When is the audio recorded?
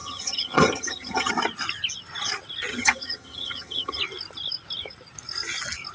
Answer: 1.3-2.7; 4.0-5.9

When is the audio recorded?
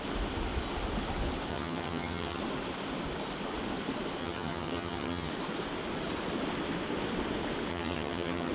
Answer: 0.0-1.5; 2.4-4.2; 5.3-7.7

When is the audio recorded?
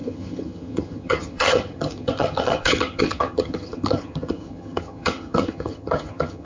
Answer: none